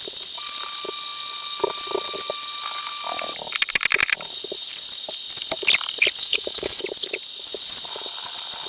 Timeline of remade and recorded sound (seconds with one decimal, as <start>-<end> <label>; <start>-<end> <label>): 0.0-6.2 recorded; 6.2-6.8 remade; 6.8-8.7 recorded